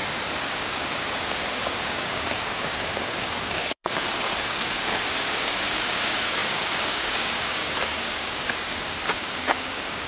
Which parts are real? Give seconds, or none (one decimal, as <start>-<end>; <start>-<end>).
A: 0.0-0.5